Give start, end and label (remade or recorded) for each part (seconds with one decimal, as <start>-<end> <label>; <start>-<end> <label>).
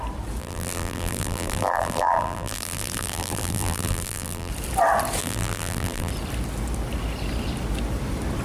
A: 0.0-0.4 recorded; 0.4-4.5 remade; 4.5-5.2 recorded; 5.2-6.1 remade; 6.1-8.4 recorded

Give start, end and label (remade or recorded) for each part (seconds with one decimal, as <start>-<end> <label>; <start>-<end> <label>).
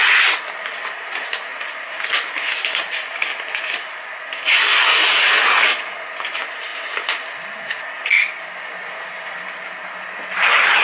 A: 0.0-4.7 recorded; 4.7-5.3 remade; 5.3-6.7 recorded; 6.7-8.5 remade; 8.5-10.8 recorded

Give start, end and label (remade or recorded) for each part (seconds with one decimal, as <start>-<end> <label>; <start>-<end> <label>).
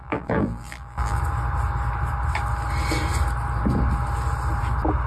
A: 0.0-1.2 remade; 1.2-5.1 recorded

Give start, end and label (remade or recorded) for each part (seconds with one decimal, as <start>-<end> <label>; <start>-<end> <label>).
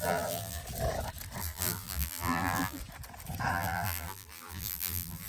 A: 0.0-0.6 remade; 0.6-1.4 recorded; 1.4-2.8 remade; 2.8-3.5 recorded; 3.5-5.3 remade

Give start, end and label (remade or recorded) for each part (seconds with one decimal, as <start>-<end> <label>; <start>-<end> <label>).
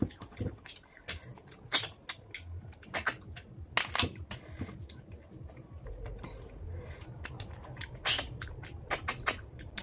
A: 0.0-9.8 recorded